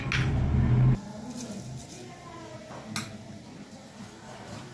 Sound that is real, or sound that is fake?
real